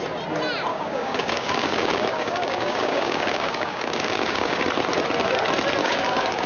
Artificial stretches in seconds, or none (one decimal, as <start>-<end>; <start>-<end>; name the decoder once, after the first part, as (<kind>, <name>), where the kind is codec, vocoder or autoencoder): 0.7-4.6 (codec, DAC); 5.8-6.5